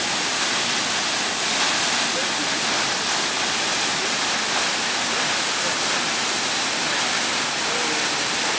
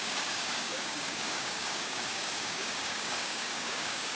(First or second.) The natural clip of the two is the first